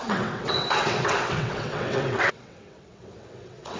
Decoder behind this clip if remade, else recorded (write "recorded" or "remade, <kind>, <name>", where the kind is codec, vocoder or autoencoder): remade, vocoder, WaveNeXt